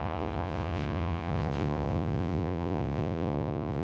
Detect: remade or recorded remade